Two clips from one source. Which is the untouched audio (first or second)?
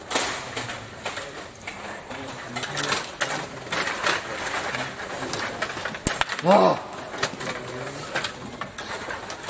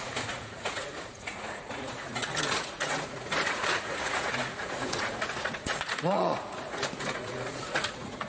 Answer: first